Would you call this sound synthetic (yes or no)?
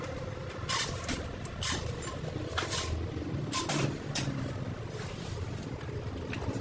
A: no